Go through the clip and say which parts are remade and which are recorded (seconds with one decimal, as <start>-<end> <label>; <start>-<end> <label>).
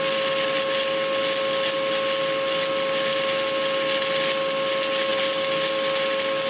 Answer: 0.0-6.5 recorded